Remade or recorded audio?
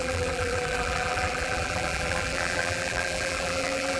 remade